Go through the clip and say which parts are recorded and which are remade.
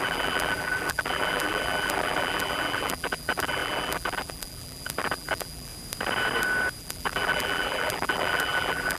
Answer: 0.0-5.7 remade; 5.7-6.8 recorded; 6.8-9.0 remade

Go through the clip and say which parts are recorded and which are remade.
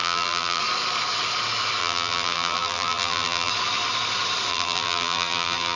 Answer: 0.0-0.6 remade; 0.6-1.8 recorded; 1.8-3.5 remade; 3.5-4.5 recorded; 4.5-5.8 remade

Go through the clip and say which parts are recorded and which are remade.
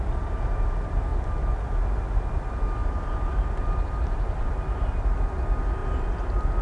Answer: 0.0-2.8 recorded; 2.8-4.5 remade; 4.5-6.6 recorded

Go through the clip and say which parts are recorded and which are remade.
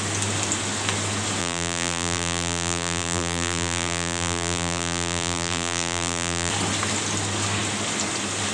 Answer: 0.0-1.4 recorded; 1.4-6.5 remade; 6.5-8.5 recorded